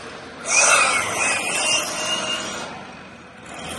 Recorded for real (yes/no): yes